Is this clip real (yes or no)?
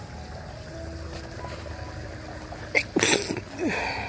yes